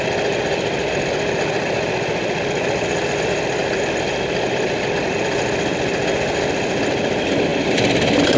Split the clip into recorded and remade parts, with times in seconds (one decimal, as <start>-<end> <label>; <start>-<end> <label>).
0.0-8.4 recorded

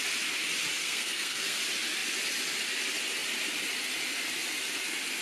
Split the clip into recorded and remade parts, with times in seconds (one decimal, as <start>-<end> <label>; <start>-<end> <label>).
0.0-0.8 recorded; 0.8-1.6 remade; 1.6-5.2 recorded

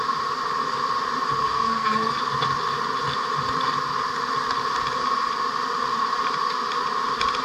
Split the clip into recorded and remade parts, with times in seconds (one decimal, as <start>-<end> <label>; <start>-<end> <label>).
0.0-1.4 recorded; 1.4-2.1 remade; 2.1-7.4 recorded

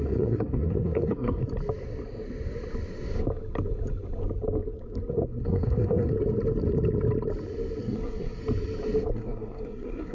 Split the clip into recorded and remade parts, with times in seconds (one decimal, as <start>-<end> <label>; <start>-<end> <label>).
0.0-1.4 remade; 1.4-5.1 recorded; 5.1-6.1 remade; 6.1-7.8 recorded; 7.8-8.4 remade; 8.4-9.1 recorded; 9.1-10.1 remade